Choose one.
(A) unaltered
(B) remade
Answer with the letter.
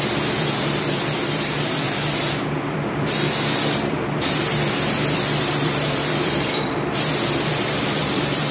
B